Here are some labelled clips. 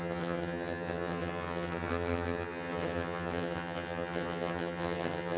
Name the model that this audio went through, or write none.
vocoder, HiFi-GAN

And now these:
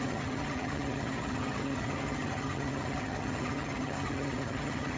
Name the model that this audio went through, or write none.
vocoder, HiFi-GAN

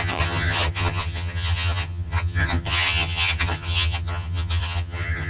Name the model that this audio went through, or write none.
vocoder, HiFi-GAN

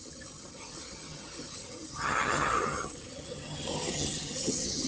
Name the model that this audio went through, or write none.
vocoder, HiFi-GAN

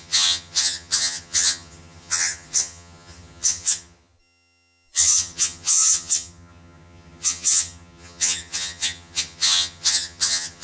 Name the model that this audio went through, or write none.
vocoder, HiFi-GAN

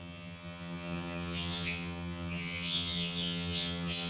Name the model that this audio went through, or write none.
vocoder, HiFi-GAN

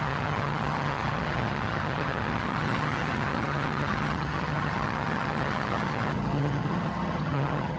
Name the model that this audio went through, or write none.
vocoder, HiFi-GAN